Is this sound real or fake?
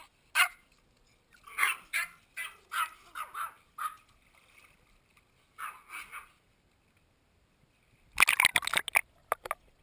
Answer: real